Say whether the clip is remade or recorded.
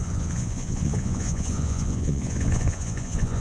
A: remade